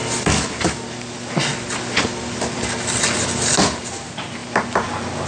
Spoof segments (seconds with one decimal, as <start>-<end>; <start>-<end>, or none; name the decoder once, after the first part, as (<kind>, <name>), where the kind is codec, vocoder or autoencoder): none